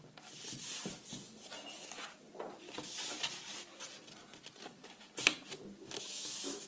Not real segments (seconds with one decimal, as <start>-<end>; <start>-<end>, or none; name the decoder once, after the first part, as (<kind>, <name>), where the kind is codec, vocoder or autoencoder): 5.8-6.7 (autoencoder, DAC-VAE)